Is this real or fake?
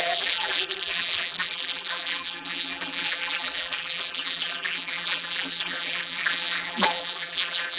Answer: fake